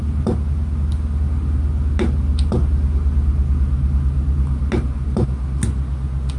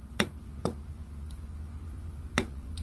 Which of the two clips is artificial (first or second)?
second